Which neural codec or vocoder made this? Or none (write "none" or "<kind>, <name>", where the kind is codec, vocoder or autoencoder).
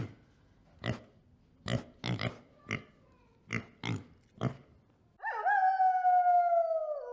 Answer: none